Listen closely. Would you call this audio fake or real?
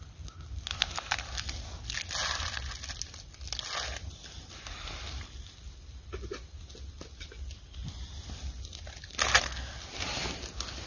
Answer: real